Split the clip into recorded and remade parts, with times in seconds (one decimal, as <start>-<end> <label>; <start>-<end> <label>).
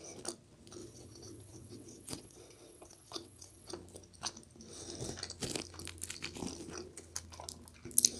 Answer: 0.0-0.8 recorded; 0.8-3.7 remade; 3.7-8.2 recorded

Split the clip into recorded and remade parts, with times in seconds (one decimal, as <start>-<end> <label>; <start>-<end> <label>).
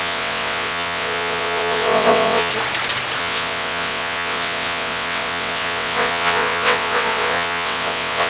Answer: 0.0-2.5 remade; 2.5-3.2 recorded; 3.2-8.3 remade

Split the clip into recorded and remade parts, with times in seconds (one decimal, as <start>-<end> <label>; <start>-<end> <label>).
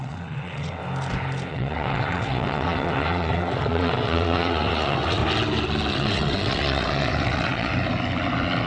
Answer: 0.0-0.8 remade; 0.8-1.5 recorded; 1.5-5.2 remade; 5.2-5.9 recorded; 5.9-7.7 remade; 7.7-8.7 recorded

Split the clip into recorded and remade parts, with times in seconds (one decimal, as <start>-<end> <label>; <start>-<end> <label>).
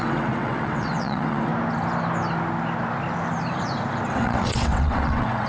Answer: 0.0-1.5 remade; 1.5-4.1 recorded; 4.1-5.5 remade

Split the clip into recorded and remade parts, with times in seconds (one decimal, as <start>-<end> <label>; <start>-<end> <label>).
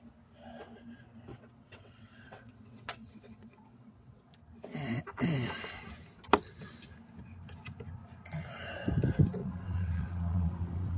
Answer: 0.0-1.3 recorded; 1.3-4.3 remade; 4.3-9.4 recorded; 9.4-11.0 remade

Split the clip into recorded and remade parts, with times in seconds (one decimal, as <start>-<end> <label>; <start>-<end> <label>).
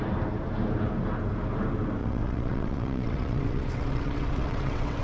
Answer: 0.0-2.0 recorded; 2.0-5.0 remade